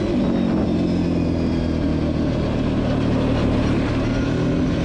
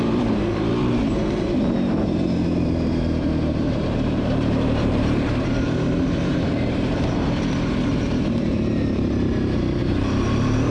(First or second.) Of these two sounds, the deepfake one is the second